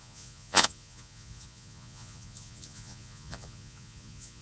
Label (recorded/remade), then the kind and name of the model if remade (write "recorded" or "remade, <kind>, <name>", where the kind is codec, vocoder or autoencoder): remade, vocoder, Vocos